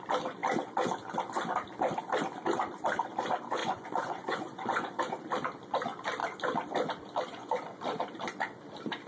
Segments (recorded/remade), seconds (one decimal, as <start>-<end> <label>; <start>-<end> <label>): 0.0-3.6 recorded; 3.6-5.0 remade; 5.0-7.3 recorded; 7.3-7.8 remade; 7.8-9.1 recorded